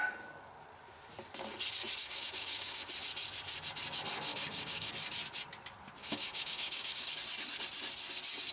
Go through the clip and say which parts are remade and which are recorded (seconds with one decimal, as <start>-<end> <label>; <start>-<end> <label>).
0.0-2.0 recorded; 2.0-2.9 remade; 2.9-4.3 recorded; 4.3-4.9 remade; 4.9-6.0 recorded; 6.0-7.1 remade; 7.1-8.5 recorded